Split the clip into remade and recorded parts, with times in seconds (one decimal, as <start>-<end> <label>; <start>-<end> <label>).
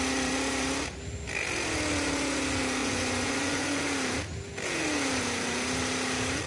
0.0-2.8 recorded; 2.8-3.8 remade; 3.8-6.5 recorded